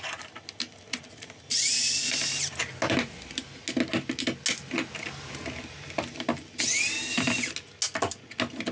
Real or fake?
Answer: real